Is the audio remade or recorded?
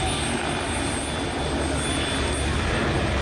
recorded